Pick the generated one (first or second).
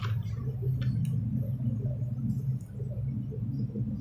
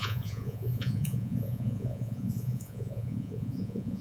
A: second